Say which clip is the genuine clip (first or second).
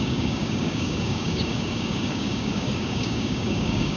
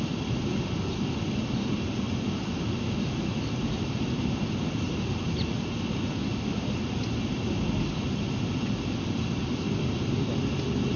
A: second